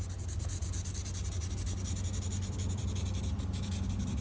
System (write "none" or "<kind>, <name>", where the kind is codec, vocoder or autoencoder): none